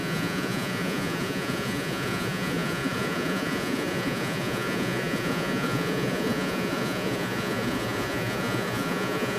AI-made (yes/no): yes